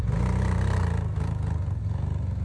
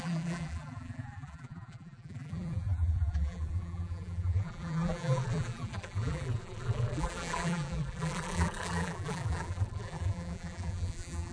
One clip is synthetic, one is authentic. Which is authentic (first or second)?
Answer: first